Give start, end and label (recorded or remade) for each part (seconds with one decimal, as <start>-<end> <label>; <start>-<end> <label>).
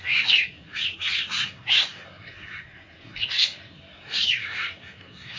0.0-5.4 remade